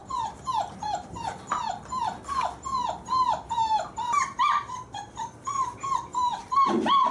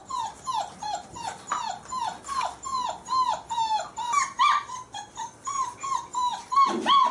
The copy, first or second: first